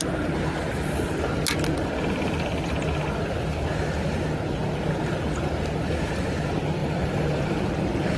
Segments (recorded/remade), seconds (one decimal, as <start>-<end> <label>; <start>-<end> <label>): 0.0-6.8 recorded; 6.8-7.6 remade; 7.6-8.2 recorded